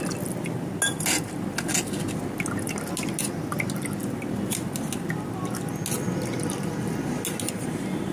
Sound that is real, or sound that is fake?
real